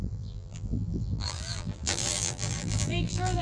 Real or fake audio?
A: fake